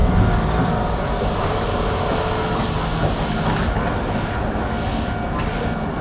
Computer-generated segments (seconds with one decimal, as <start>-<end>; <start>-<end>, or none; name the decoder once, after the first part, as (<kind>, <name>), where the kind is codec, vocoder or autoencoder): none